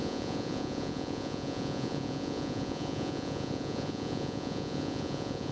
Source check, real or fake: fake